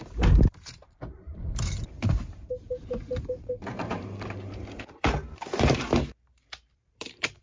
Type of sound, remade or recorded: remade